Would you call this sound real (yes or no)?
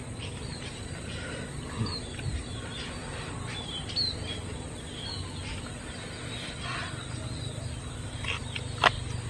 yes